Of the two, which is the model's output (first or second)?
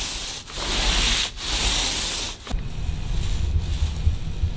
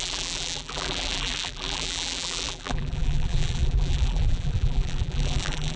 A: second